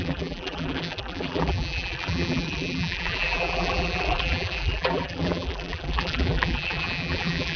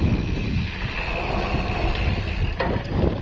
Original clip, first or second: second